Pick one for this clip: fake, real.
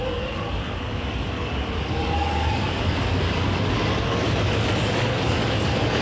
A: fake